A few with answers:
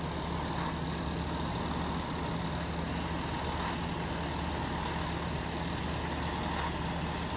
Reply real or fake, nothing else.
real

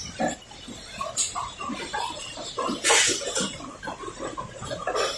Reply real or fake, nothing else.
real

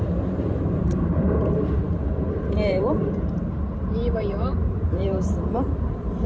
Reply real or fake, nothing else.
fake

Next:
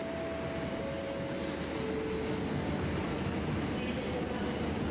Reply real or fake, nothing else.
real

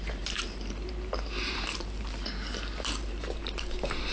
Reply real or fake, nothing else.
fake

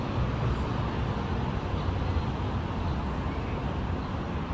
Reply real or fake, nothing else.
real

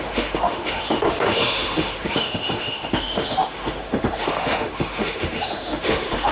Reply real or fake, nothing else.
fake